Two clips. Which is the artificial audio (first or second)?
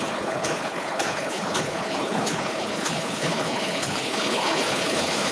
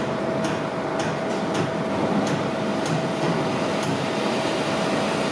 first